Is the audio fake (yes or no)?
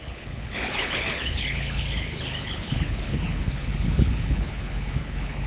yes